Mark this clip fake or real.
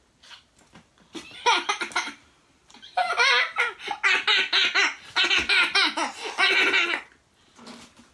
real